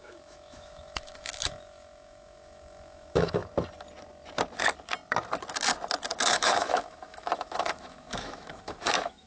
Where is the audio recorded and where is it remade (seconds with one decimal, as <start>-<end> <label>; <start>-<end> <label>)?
0.0-3.4 remade; 3.4-6.3 recorded; 6.3-9.3 remade